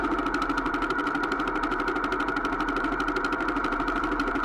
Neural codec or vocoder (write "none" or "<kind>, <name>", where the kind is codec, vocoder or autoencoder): vocoder, BigVGAN v2